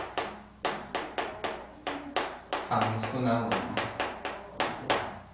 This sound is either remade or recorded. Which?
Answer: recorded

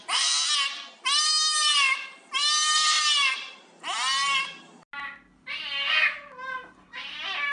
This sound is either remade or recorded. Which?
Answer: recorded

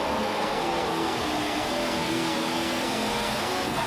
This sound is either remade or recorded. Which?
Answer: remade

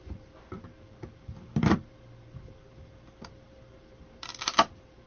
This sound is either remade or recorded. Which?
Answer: recorded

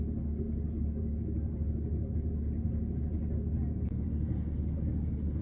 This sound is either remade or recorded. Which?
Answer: recorded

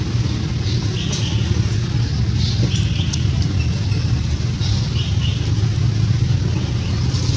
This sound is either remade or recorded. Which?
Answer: recorded